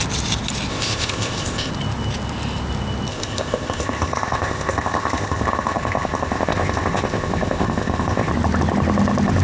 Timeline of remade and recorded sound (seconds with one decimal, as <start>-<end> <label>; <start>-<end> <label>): 0.0-0.7 recorded; 0.7-1.7 remade; 1.7-3.1 recorded; 3.1-8.3 remade; 8.3-9.4 recorded